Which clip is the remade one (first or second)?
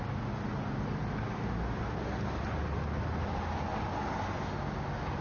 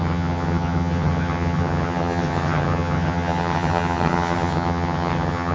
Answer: second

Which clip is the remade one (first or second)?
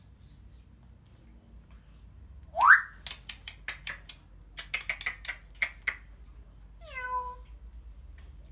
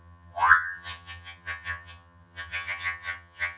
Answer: second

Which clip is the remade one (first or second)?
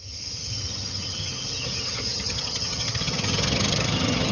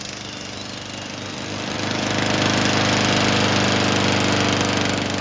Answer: first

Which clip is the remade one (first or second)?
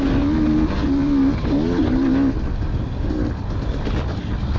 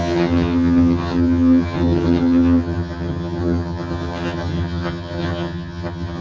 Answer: second